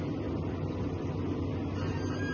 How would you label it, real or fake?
real